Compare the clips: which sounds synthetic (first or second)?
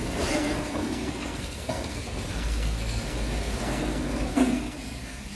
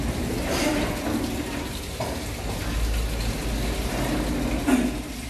first